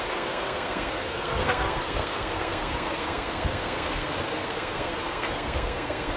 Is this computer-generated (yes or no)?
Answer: yes